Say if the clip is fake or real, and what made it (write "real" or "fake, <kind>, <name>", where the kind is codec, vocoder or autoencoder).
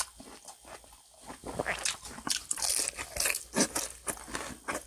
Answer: real